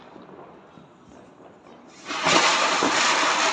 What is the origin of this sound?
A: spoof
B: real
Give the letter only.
B